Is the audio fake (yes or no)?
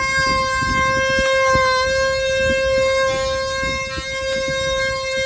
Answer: no